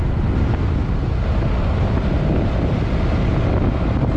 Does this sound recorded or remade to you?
recorded